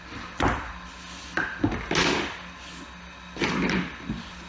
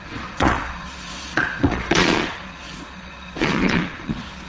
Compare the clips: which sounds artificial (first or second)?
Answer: second